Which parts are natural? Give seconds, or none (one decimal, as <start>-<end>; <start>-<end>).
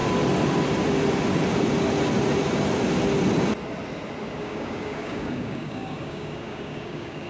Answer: 0.0-4.4